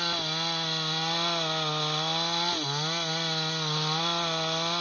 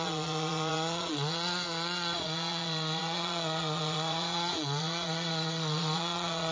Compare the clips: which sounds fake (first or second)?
second